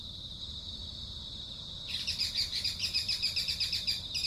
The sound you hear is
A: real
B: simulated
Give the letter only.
A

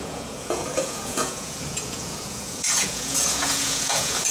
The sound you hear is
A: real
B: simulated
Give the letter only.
B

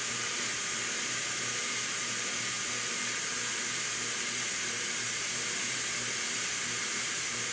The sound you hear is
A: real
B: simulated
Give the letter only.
B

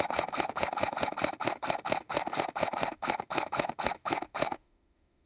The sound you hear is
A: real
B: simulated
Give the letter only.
B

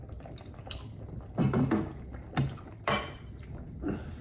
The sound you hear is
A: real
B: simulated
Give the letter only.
A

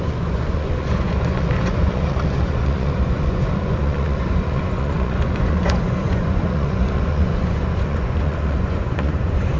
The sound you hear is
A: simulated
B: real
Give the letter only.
A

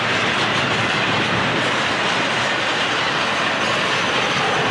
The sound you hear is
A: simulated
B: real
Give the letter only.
B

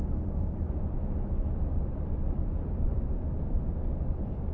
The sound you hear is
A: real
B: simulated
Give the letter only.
A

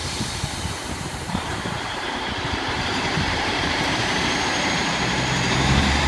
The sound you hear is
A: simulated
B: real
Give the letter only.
A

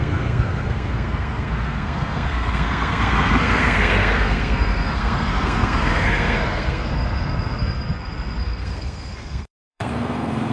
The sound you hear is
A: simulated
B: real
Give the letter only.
A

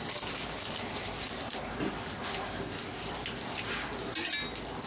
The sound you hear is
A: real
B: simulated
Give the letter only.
A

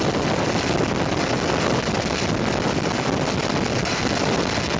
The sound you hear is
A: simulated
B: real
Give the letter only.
B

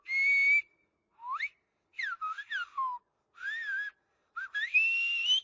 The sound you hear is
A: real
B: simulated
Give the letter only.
A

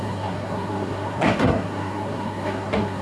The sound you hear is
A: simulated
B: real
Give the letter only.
A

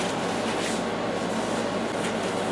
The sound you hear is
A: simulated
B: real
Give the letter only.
B